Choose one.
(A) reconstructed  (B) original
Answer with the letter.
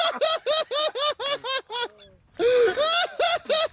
B